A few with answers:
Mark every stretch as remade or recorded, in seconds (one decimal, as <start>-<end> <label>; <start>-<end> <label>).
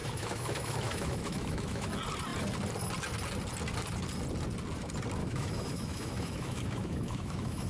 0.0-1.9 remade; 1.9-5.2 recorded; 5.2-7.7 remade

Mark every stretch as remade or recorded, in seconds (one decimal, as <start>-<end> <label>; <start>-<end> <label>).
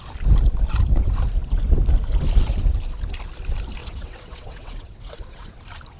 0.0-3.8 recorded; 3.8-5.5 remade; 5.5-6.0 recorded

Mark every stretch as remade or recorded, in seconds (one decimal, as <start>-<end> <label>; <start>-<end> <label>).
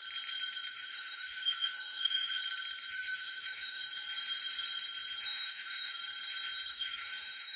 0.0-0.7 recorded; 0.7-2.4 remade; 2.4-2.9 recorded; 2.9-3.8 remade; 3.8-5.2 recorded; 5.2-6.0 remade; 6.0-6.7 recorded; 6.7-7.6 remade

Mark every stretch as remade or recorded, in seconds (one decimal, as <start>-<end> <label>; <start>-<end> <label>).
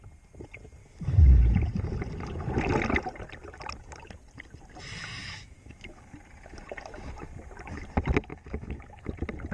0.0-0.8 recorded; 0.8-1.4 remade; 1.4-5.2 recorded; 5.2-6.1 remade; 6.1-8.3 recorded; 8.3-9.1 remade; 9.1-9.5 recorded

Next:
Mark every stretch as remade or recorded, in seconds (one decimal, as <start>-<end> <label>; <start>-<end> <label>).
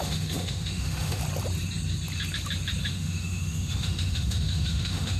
0.0-1.2 remade; 1.2-2.8 recorded; 2.8-5.2 remade